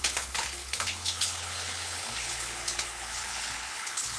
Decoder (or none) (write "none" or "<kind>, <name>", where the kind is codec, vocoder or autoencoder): codec, HILCodec